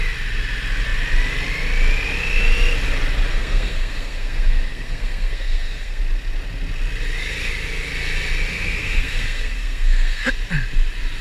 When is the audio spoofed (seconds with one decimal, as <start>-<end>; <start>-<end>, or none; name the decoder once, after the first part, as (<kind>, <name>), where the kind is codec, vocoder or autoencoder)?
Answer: 3.3-6.0 (codec, SNAC); 8.5-10.3

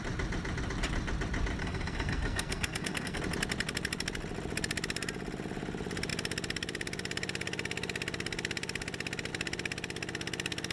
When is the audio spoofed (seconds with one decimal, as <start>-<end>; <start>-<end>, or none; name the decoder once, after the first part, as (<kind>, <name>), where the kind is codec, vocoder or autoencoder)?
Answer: 1.6-3.2 (codec, SNAC)

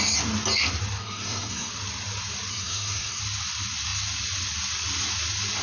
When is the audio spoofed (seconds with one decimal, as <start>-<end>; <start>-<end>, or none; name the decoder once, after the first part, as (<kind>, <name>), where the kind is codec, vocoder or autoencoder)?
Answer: 1.0-1.7 (codec, SNAC); 2.5-3.2

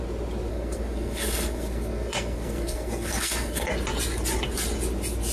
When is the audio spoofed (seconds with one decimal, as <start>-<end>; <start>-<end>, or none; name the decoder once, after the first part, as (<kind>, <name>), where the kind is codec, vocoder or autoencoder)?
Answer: 0.5-3.7 (codec, SNAC)

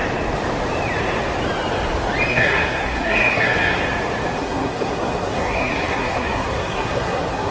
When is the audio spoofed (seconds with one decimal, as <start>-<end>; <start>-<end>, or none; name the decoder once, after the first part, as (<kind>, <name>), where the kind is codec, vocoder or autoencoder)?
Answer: 2.3-3.8 (codec, SNAC); 4.4-7.5

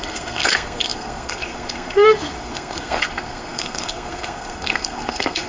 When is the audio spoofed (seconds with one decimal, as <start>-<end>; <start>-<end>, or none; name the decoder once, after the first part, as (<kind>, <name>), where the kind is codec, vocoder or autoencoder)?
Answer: 0.0-5.5 (codec, SNAC)

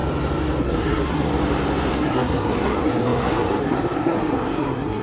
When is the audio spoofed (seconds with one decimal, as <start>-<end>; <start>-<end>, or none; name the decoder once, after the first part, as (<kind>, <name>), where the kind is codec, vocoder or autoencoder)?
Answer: 0.6-1.3 (codec, SNAC); 1.9-5.0